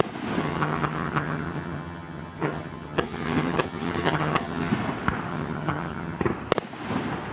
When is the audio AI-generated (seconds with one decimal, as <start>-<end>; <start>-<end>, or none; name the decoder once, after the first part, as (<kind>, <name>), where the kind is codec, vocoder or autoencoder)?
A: 0.4-4.7 (vocoder, HiFi-GAN); 5.3-6.2